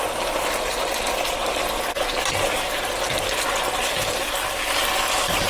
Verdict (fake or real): real